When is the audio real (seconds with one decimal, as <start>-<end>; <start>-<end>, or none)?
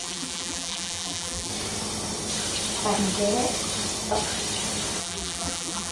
1.5-5.0